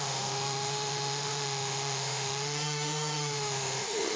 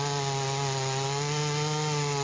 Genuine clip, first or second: second